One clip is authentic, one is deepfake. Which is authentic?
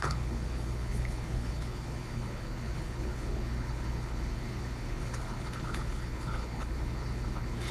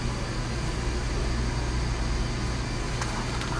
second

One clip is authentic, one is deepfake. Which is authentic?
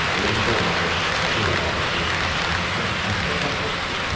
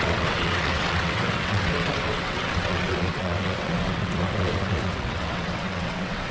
first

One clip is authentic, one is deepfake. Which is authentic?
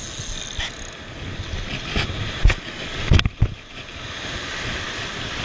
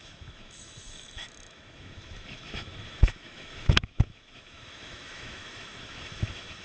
first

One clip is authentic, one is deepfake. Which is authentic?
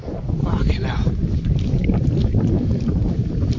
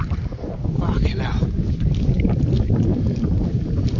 second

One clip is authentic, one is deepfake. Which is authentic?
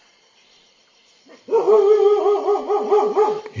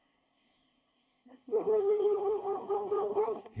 first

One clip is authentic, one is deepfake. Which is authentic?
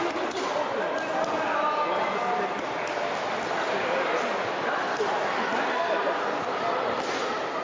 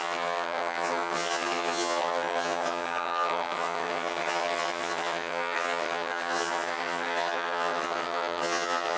first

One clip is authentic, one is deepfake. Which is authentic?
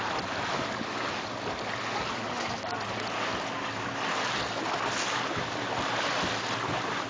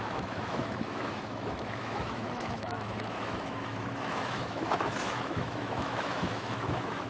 first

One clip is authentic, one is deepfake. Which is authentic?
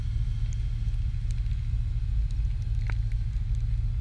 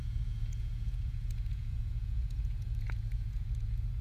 first